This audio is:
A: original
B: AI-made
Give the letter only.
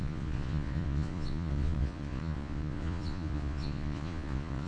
B